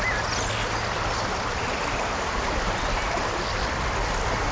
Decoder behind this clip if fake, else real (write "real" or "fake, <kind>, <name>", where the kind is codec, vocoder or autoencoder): real